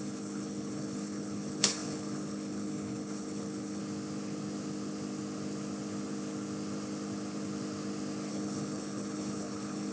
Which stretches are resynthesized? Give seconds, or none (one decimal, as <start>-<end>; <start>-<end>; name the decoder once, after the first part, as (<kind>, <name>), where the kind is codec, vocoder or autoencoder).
0.0-3.8 (codec, HILCodec); 8.3-9.9